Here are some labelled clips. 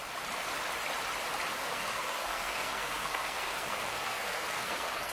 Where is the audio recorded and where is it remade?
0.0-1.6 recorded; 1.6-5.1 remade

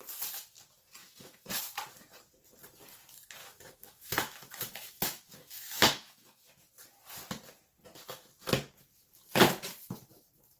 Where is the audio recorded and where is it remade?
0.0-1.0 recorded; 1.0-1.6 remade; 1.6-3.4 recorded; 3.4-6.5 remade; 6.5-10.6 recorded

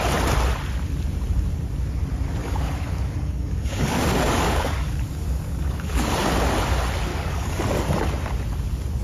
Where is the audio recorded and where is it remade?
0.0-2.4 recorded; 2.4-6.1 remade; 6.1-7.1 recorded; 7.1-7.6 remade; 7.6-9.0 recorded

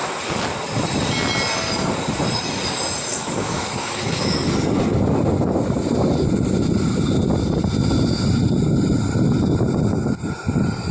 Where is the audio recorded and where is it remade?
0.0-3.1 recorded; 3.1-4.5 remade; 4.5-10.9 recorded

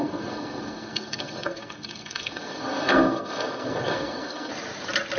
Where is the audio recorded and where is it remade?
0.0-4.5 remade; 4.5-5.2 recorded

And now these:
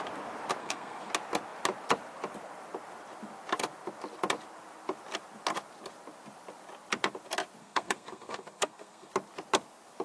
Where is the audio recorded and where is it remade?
0.0-0.6 recorded; 0.6-1.1 remade; 1.1-7.6 recorded; 7.6-9.1 remade; 9.1-10.0 recorded

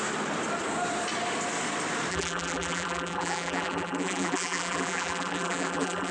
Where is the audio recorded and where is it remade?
0.0-2.1 recorded; 2.1-6.1 remade

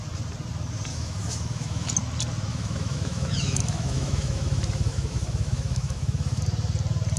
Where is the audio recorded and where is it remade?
0.0-0.9 recorded; 0.9-1.9 remade; 1.9-2.5 recorded; 2.5-6.4 remade; 6.4-7.2 recorded